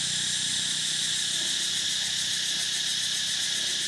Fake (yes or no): no